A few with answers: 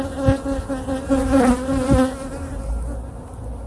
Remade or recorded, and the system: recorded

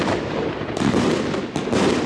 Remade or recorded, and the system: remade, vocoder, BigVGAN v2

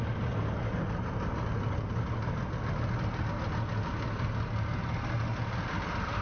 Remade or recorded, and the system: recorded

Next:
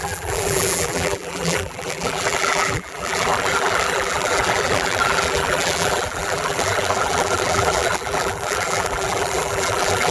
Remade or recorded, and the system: remade, vocoder, BigVGAN v2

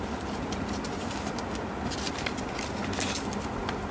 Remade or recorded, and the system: recorded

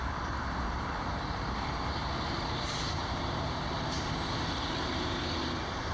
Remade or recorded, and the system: remade, vocoder, BigVGAN v2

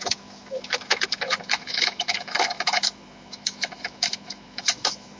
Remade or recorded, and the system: remade, autoencoder, DAC-VAE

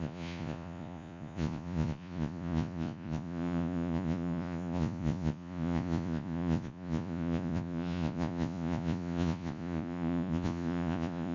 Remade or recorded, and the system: remade, vocoder, Vocos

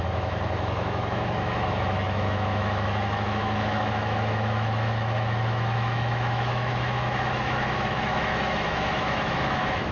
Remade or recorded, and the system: remade, autoencoder, DAC-VAE